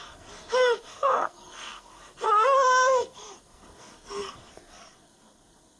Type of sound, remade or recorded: remade